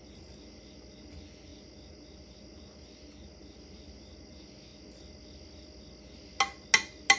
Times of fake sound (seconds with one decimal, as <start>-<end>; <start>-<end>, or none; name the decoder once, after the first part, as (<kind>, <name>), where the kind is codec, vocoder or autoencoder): none